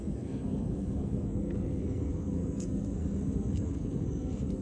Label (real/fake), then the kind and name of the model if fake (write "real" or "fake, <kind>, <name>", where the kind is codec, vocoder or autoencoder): fake, codec, SNAC